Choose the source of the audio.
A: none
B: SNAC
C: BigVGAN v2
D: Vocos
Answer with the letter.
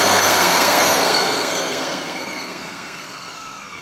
B